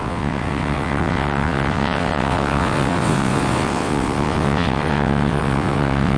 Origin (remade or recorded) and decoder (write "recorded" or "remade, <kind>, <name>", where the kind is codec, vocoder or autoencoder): remade, vocoder, WaveNeXt